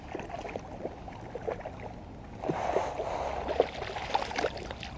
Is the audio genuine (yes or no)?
yes